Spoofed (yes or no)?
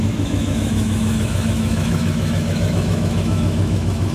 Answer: yes